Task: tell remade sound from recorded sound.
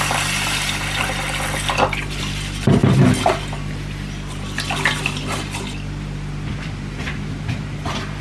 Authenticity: recorded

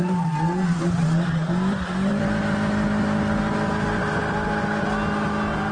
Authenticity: recorded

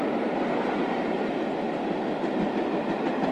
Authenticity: recorded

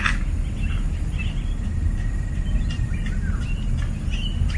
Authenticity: recorded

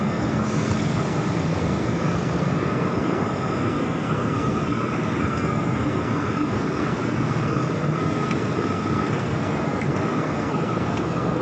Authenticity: remade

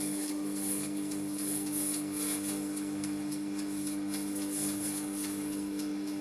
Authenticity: remade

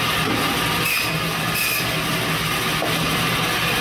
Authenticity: recorded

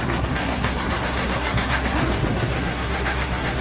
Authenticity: remade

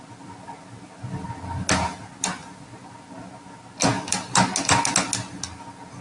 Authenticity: recorded